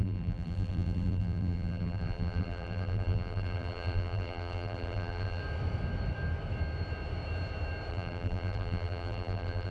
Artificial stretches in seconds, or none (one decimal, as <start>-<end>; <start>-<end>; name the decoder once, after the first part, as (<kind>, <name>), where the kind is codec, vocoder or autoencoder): 0.0-5.4 (vocoder, BigVGAN v2); 7.9-9.7